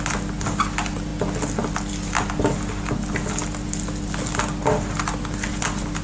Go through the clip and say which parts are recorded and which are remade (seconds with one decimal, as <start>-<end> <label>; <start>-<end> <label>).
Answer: 0.0-6.0 recorded